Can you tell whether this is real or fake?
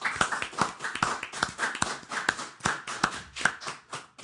real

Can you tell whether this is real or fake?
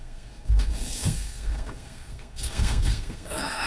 fake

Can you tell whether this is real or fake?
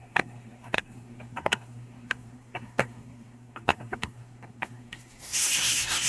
fake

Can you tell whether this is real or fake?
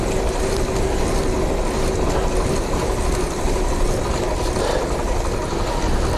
real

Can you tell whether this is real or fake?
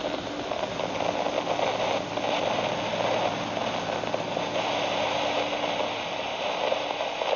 real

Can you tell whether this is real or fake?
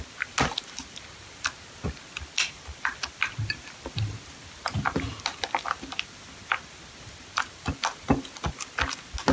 real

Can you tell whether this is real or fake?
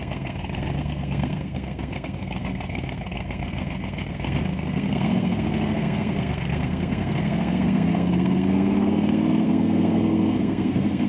fake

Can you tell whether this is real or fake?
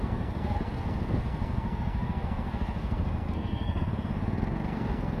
fake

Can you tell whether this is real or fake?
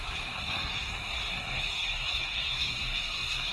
fake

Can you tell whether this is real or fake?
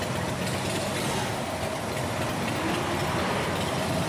real